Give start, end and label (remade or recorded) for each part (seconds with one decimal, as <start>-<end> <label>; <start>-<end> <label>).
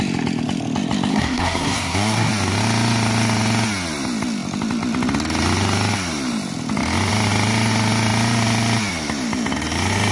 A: 0.0-1.1 recorded; 1.1-2.3 remade; 2.3-10.1 recorded